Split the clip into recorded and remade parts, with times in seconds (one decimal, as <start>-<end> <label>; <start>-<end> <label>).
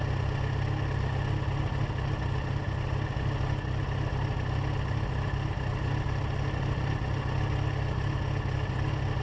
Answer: 0.0-9.2 recorded